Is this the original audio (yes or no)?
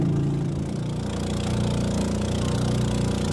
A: yes